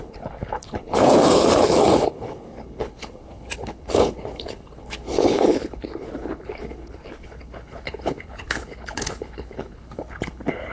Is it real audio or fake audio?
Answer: fake